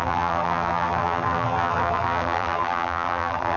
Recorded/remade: remade